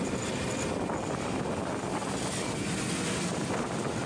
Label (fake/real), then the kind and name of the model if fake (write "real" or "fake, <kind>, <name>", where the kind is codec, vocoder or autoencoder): real